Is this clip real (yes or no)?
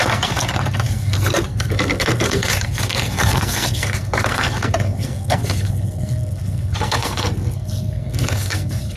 no